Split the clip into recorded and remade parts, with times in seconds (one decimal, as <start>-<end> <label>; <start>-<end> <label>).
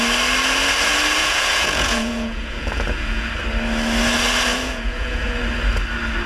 0.0-1.2 recorded; 1.2-3.3 remade; 3.3-4.5 recorded; 4.5-5.4 remade; 5.4-6.3 recorded